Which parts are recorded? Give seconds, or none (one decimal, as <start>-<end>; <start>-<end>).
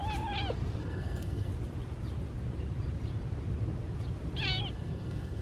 0.0-0.8; 1.5-4.7